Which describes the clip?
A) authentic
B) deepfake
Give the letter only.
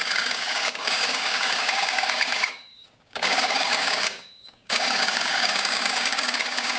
B